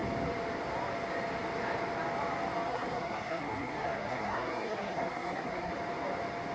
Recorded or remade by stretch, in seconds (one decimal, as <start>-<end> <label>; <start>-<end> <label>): 0.0-2.7 recorded; 2.7-5.7 remade; 5.7-6.5 recorded